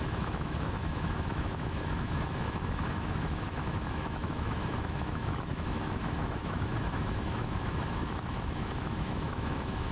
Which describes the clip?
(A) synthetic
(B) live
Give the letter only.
A